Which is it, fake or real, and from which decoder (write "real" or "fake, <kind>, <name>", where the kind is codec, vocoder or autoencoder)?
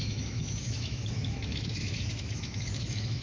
fake, autoencoder, DAC-VAE